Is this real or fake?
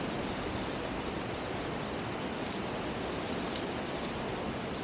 real